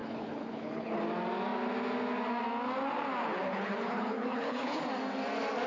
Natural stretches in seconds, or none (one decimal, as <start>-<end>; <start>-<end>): 1.0-3.2; 4.8-5.7